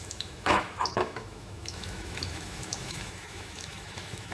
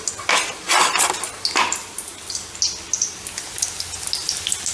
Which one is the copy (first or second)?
first